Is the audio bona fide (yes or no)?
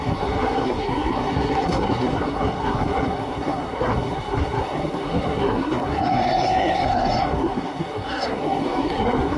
no